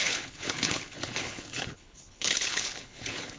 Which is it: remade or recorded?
remade